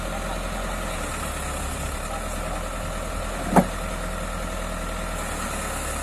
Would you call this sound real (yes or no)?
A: yes